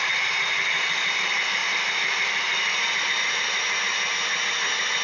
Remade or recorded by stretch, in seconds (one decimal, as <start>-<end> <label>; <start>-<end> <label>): 0.0-5.0 recorded